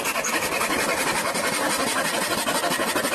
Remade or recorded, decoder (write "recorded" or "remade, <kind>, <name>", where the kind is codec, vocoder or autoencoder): recorded